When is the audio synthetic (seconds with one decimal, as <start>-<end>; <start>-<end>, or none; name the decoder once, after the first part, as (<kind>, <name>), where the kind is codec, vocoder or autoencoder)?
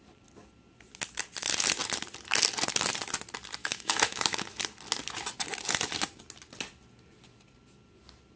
3.6-4.6 (autoencoder, DAC-VAE)